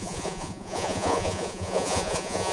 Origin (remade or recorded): remade